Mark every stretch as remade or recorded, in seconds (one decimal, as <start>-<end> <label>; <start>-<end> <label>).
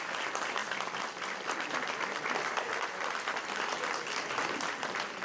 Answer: 0.0-5.2 recorded